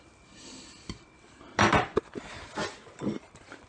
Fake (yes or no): no